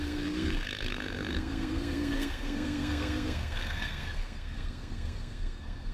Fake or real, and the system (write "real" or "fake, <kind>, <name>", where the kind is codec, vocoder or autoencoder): fake, codec, SNAC